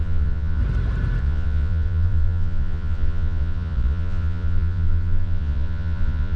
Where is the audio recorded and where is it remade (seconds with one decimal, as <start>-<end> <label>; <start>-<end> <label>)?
0.0-0.6 remade; 0.6-1.2 recorded; 1.2-6.4 remade